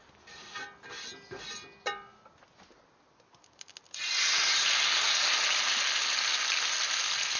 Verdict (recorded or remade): recorded